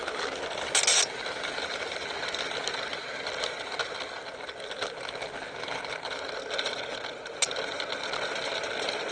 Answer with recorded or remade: recorded